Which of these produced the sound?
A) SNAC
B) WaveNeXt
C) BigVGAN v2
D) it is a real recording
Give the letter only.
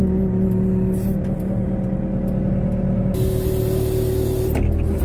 D